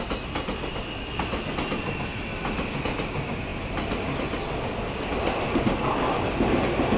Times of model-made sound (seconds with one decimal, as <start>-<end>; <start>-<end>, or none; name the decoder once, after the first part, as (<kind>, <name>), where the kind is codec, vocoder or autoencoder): none

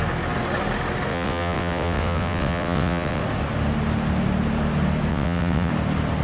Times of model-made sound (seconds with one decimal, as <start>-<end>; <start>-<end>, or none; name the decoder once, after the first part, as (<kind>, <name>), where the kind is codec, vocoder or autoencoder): 1.1-3.2 (vocoder, WaveNeXt); 5.1-5.7